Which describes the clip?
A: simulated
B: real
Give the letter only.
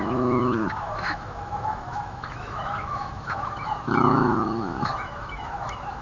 A